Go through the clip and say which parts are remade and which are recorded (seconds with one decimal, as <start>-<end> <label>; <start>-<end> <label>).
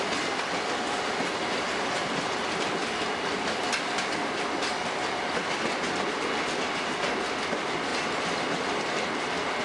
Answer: 0.0-9.6 recorded